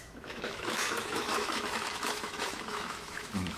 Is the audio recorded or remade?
remade